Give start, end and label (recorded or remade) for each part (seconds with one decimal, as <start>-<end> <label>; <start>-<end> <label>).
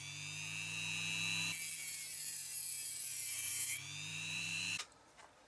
0.0-1.8 recorded; 1.8-3.5 remade; 3.5-4.1 recorded; 4.1-4.8 remade; 4.8-5.5 recorded